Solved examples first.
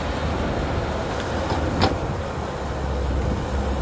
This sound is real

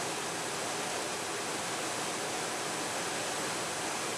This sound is real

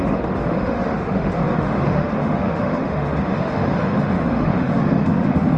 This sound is fake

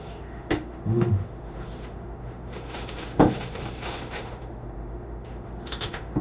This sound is fake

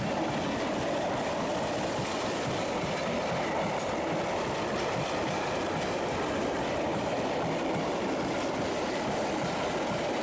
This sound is real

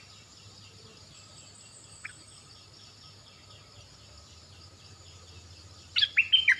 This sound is real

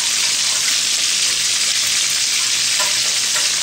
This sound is real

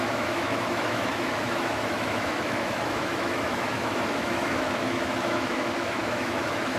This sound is fake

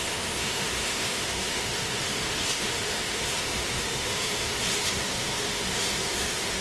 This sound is fake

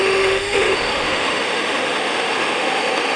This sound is fake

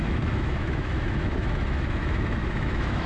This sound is fake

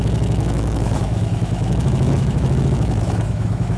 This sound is fake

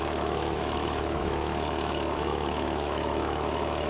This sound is fake